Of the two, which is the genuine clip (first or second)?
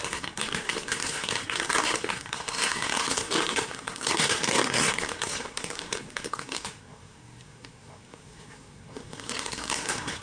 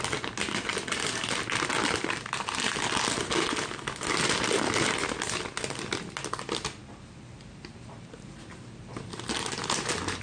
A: second